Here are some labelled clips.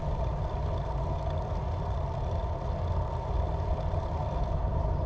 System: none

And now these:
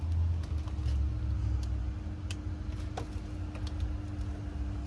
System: none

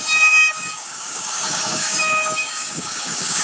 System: codec, DAC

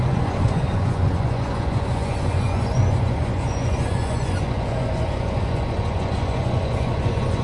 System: vocoder, Vocos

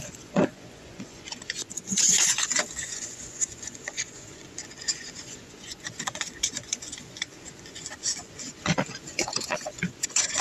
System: vocoder, Vocos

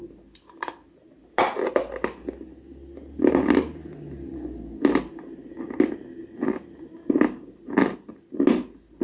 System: none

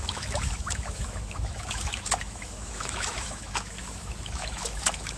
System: autoencoder, DAC-VAE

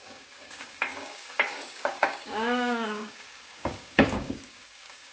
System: codec, DAC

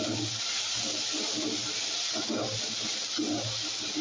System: none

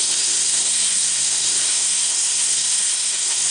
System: codec, SNAC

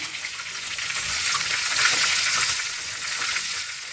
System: vocoder, Vocos